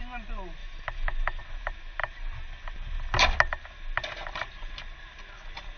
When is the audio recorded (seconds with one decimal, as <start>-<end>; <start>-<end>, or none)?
0.0-0.6; 1.4-5.8